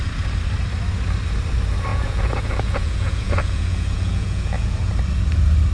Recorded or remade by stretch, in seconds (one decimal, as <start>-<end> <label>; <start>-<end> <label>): 0.0-1.9 recorded; 1.9-4.9 remade; 4.9-5.7 recorded